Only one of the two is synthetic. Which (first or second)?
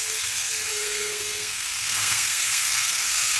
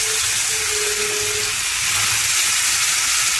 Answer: first